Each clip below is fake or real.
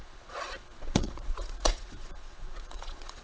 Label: fake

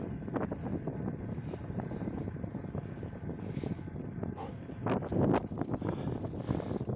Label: real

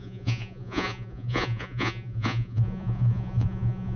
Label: fake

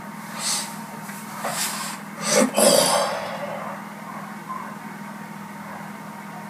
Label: real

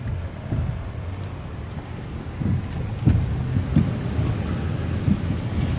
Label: real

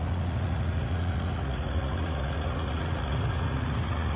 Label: fake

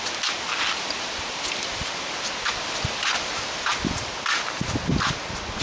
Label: real